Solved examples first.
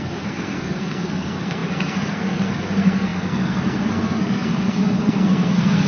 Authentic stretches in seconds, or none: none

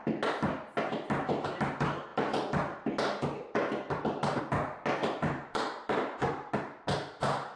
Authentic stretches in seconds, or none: 0.0-5.0; 6.5-7.6

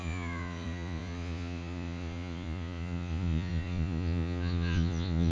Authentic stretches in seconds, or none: none

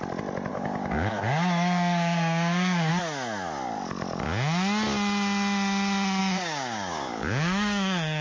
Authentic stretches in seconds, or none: 0.0-0.5; 2.9-6.2

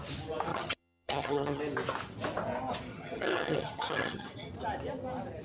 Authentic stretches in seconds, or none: 0.0-0.5; 1.6-2.9; 4.5-5.4

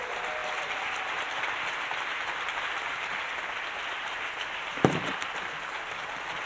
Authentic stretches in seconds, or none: 0.0-6.5

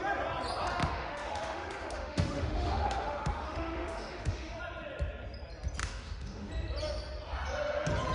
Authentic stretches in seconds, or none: 0.0-0.8; 4.6-5.8; 6.5-8.1